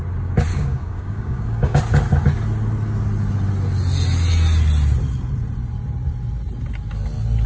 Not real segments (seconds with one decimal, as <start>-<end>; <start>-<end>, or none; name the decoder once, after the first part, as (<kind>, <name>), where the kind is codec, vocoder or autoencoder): 0.5-1.8 (codec, DAC)